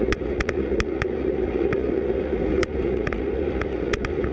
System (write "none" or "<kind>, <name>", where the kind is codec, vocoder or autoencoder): vocoder, Vocos